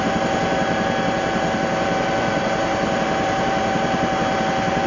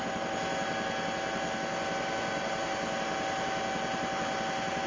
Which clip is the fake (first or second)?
first